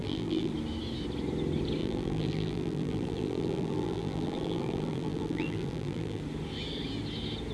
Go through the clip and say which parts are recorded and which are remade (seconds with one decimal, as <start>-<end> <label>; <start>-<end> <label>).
0.0-0.5 remade; 0.5-1.8 recorded; 1.8-6.2 remade; 6.2-7.5 recorded